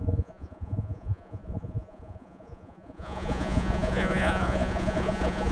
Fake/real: fake